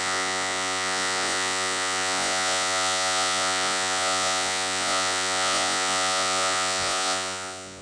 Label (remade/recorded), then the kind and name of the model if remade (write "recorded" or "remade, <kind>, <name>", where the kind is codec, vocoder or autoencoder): remade, vocoder, Vocos